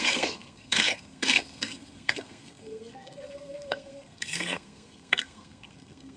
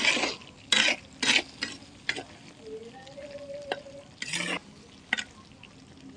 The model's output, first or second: first